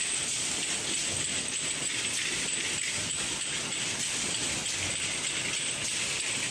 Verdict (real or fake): real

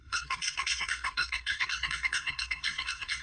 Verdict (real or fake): fake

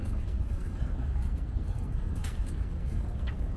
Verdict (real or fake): fake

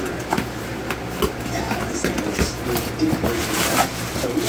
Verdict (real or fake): real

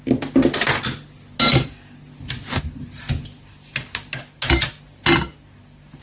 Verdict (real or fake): real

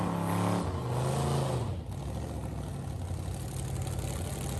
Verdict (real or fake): real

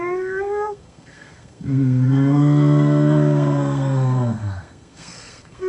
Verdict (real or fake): fake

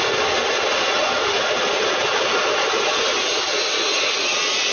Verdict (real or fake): real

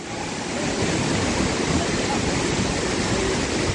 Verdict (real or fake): real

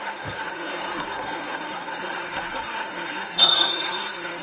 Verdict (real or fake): fake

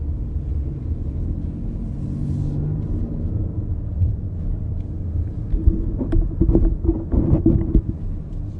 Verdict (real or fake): real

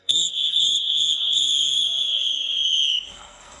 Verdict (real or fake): fake